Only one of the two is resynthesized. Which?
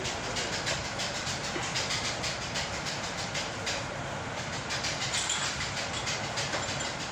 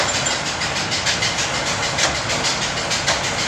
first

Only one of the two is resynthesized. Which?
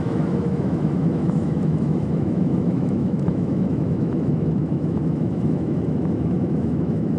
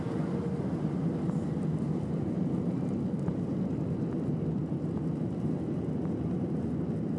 first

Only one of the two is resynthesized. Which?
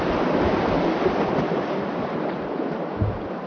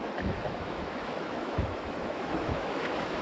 second